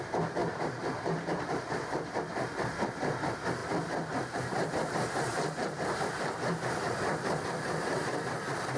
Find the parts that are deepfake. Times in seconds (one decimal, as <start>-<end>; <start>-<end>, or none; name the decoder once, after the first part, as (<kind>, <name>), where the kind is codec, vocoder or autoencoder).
0.4-1.6 (vocoder, BigVGAN v2); 5.3-8.1